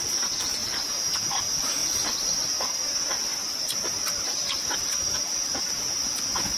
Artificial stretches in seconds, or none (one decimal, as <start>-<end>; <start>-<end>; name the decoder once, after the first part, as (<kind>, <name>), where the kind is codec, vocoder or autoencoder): none